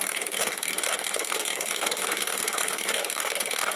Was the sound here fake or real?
fake